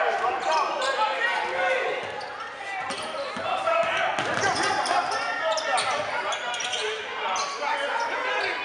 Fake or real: real